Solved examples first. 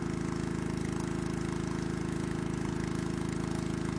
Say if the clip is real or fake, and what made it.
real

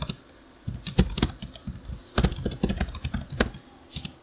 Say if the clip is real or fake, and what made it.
real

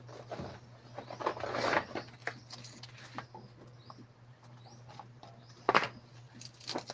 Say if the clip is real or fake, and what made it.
real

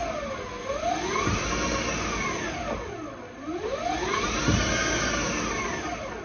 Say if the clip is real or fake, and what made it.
real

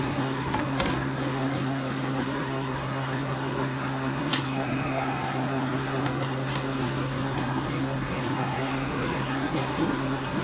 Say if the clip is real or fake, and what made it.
fake, codec, SNAC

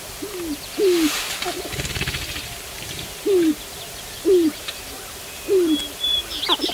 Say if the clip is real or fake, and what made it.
fake, vocoder, BigVGAN v2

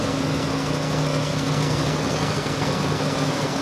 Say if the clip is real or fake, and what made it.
fake, codec, SNAC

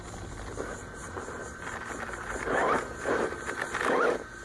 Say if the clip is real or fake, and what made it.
real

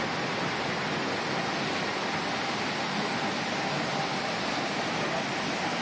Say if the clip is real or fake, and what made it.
real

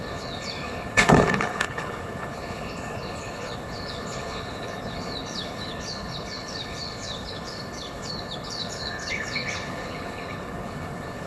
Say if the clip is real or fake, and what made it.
fake, codec, HILCodec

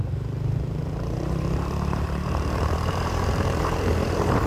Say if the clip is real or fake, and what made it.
fake, vocoder, BigVGAN v2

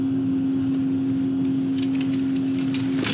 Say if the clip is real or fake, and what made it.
real